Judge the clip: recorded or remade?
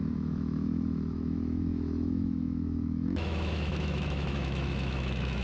remade